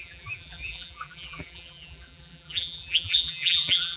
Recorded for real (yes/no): no